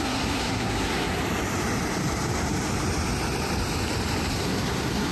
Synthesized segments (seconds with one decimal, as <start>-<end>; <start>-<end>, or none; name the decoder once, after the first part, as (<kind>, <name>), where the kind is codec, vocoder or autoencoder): 0.0-1.2 (codec, SNAC); 4.3-5.1